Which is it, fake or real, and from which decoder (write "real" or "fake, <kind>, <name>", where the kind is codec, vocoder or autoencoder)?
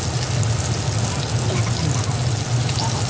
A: real